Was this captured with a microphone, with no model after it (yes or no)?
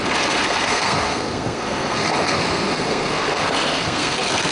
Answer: no